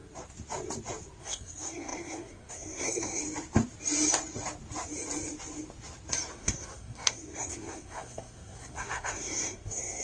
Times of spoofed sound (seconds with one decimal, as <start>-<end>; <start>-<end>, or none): 1.2-3.2; 6.3-10.0